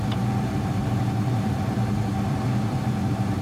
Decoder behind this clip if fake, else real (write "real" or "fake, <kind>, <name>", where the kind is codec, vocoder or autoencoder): fake, vocoder, BigVGAN v2